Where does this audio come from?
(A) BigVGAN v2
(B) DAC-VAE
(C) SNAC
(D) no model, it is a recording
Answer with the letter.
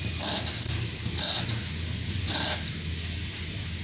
D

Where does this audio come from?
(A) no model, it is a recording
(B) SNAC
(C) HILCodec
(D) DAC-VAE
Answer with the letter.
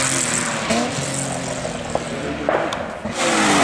A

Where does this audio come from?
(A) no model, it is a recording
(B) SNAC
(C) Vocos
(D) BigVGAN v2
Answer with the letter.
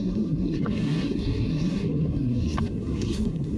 B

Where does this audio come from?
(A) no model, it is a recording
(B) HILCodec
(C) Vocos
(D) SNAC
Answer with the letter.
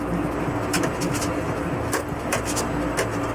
A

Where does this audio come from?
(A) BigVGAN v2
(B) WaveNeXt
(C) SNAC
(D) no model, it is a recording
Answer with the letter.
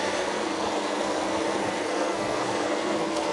C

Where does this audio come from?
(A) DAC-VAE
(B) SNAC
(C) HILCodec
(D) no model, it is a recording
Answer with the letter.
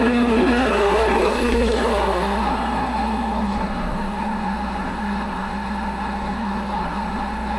B